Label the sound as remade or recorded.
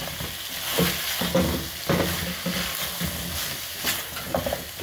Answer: recorded